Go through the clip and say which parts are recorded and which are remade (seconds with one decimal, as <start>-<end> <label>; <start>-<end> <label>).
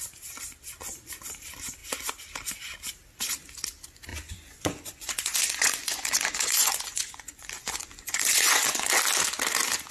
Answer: 0.0-4.1 recorded; 4.1-8.9 remade; 8.9-9.9 recorded